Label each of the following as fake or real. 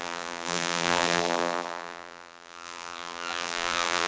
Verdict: fake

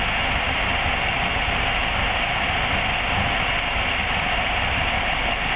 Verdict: real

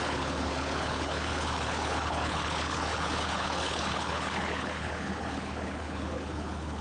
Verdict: fake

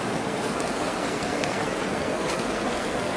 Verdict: fake